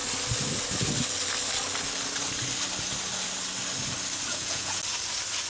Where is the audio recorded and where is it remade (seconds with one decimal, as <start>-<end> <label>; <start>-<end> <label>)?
0.0-4.3 recorded; 4.3-4.8 remade; 4.8-5.5 recorded

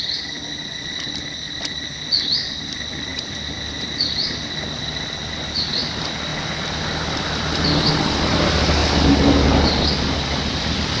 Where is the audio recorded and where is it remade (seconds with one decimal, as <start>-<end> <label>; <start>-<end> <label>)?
0.0-11.0 recorded

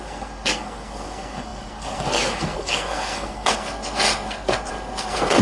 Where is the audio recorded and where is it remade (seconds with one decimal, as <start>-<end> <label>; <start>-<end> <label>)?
0.0-5.4 remade

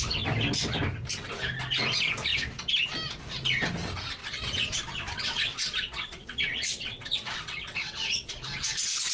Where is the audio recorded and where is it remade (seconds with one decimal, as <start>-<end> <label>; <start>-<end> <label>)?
0.0-4.2 recorded; 4.2-8.3 remade; 8.3-9.1 recorded

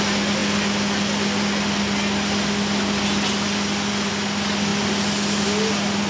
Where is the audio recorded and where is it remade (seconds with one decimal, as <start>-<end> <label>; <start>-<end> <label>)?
0.0-6.1 recorded

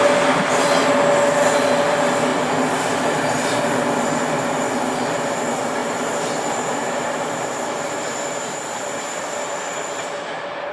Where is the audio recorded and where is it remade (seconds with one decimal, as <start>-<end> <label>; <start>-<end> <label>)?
0.0-5.8 recorded; 5.8-10.7 remade

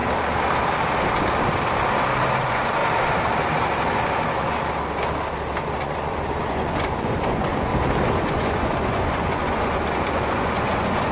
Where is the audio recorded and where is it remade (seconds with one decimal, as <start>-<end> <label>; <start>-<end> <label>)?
0.0-2.4 recorded; 2.4-2.8 remade; 2.8-5.8 recorded; 5.8-7.7 remade; 7.7-8.2 recorded; 8.2-11.1 remade